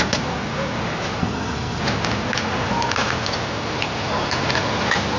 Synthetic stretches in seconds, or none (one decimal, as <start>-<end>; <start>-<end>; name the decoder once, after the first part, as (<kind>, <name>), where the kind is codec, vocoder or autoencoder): 1.2-1.8 (codec, SNAC)